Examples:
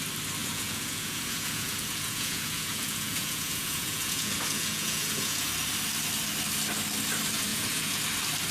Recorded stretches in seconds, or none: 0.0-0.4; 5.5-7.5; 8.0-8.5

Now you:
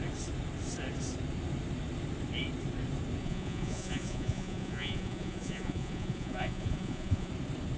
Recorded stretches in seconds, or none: 0.0-3.2; 7.3-7.8

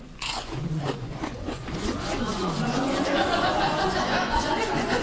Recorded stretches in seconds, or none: none

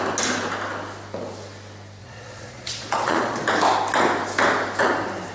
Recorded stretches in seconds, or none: 0.0-2.0; 3.5-5.3

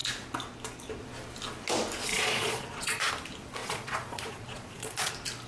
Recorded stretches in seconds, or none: 0.0-2.1; 3.1-3.6; 5.1-5.5

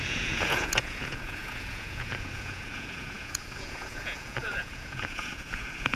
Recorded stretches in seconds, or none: none

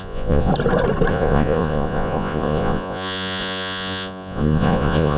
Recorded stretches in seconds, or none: 0.5-1.1

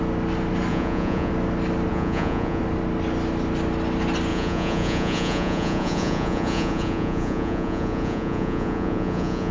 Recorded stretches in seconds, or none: 0.0-0.7; 1.3-1.9; 2.6-4.3